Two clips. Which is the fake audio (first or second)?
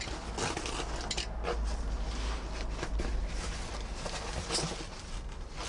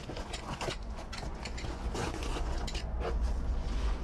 second